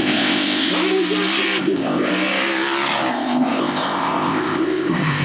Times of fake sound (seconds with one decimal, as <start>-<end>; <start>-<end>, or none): 0.0-0.7; 1.6-2.1; 3.1-5.2